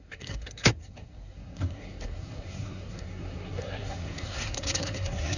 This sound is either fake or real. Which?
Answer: fake